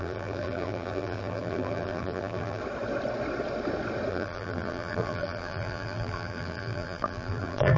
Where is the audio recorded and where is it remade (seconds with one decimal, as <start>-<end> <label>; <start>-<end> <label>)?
0.0-2.6 remade; 2.6-4.1 recorded; 4.1-7.8 remade